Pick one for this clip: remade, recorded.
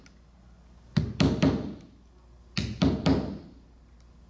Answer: recorded